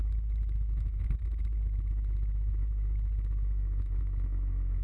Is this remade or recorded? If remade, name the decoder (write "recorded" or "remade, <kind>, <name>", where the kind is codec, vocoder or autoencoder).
remade, autoencoder, DAC-VAE